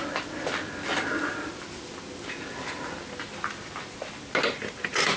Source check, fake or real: real